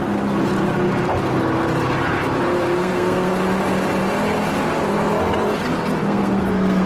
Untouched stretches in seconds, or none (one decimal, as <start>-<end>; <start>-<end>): 0.0-2.8; 3.3-6.0